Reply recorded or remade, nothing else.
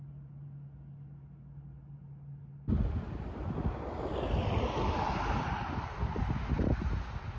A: recorded